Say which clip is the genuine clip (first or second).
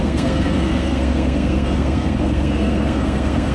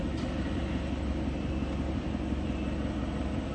second